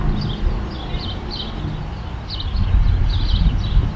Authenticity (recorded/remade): recorded